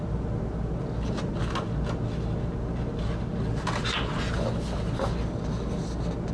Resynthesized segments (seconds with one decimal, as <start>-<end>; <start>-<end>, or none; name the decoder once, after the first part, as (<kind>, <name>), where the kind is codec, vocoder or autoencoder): none